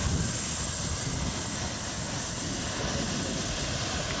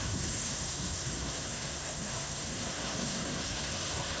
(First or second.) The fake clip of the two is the second